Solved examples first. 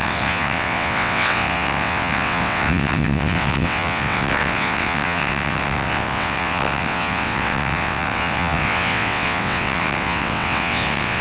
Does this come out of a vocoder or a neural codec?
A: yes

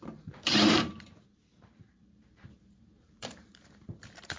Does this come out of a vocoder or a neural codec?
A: yes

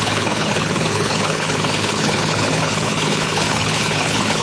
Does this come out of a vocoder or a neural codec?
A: yes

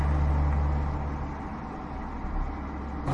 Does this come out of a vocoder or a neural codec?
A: no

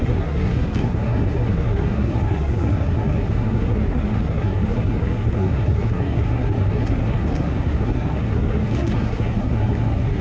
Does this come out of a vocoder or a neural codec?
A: yes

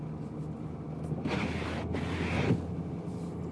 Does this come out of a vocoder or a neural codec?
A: no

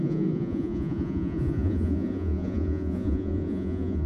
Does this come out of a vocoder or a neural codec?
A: yes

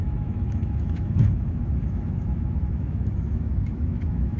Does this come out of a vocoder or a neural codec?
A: yes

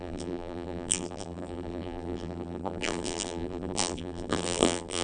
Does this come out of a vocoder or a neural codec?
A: yes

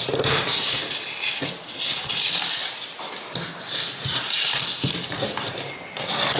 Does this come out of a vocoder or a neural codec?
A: no